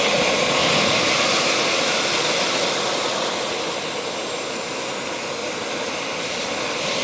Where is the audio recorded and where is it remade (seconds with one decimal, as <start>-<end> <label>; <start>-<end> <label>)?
0.0-0.6 recorded; 0.6-1.5 remade; 1.5-5.4 recorded; 5.4-7.0 remade